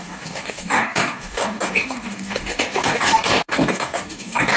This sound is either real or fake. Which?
fake